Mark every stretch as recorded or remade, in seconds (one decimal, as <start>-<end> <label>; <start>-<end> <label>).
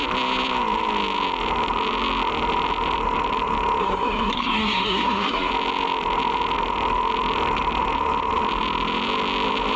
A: 0.0-3.8 recorded; 3.8-5.5 remade; 5.5-9.8 recorded